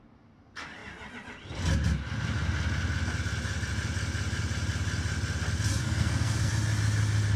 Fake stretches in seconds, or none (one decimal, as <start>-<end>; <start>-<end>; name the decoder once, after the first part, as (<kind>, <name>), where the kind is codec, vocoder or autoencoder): 5.8-6.5 (codec, SNAC)